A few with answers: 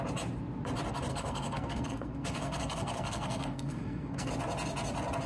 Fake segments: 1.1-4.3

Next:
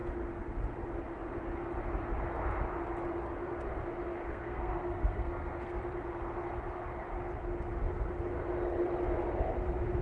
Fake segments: 4.3-5.8

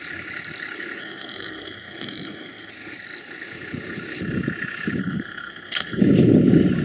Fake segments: 1.0-2.7; 5.0-6.0

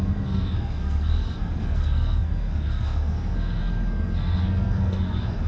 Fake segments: 0.0-5.5

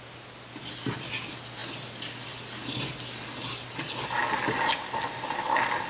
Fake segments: none